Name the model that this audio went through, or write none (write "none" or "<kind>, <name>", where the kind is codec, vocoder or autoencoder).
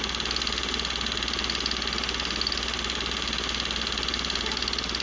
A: none